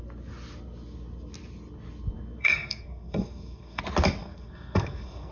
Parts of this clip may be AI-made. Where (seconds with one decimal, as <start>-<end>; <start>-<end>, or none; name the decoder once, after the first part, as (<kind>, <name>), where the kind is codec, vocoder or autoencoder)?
2.4-3.8 (codec, SNAC); 4.2-5.3